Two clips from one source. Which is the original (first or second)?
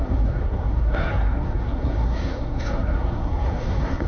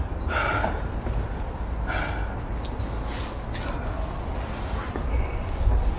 second